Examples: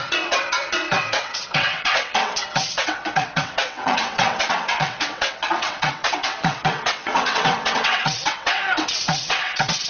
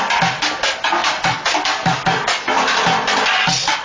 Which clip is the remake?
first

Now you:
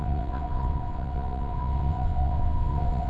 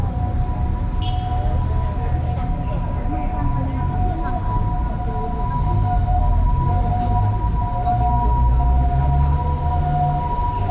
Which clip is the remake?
first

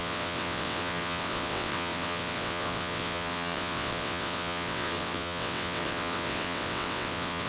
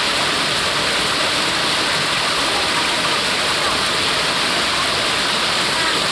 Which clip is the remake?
first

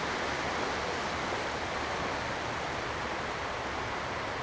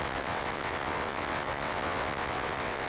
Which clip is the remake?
second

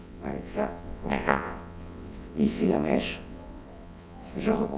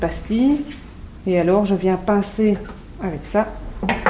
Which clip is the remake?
first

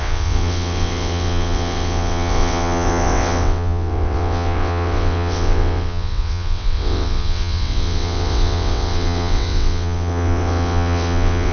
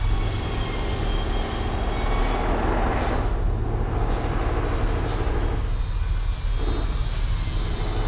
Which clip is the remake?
first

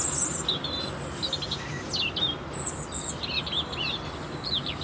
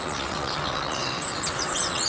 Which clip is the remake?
second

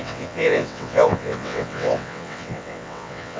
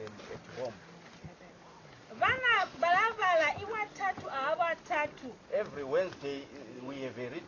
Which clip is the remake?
first